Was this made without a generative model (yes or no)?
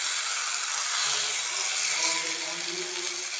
yes